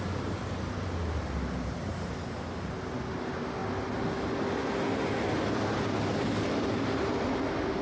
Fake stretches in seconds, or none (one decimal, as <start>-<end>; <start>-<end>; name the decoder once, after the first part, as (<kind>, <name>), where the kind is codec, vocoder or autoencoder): none